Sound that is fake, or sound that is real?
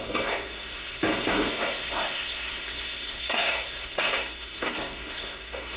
fake